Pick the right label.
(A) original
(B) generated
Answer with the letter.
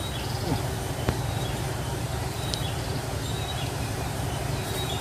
B